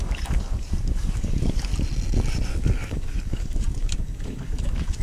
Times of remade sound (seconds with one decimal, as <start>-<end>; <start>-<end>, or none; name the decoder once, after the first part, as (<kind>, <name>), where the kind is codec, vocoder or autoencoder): 0.0-1.7 (codec, DAC); 2.5-5.0